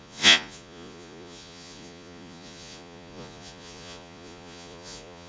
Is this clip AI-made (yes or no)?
yes